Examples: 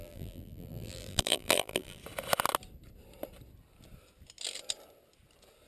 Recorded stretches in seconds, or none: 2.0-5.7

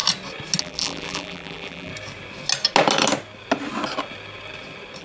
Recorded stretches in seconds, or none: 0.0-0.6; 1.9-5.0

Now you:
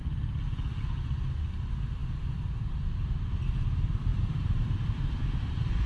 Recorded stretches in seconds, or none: 0.0-4.1

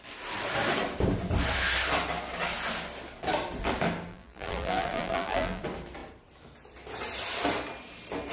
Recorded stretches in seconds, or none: 0.0-4.1; 5.6-8.3

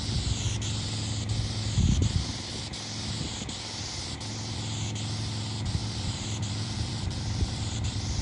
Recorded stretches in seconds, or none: 0.0-5.8

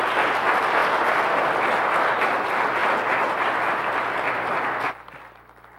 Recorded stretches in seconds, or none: 0.0-0.8; 1.6-2.8; 3.9-5.8